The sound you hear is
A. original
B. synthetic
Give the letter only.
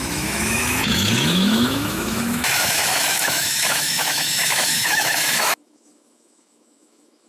B